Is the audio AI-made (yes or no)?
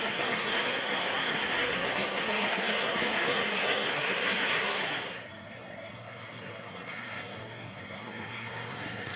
yes